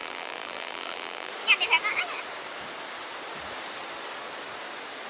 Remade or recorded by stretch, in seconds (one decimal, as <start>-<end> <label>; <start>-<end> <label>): 0.0-1.3 remade; 1.3-5.1 recorded